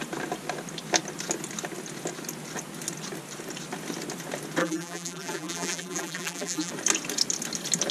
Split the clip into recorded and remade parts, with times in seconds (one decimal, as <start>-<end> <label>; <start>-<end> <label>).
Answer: 0.0-4.6 recorded; 4.6-6.7 remade; 6.7-7.9 recorded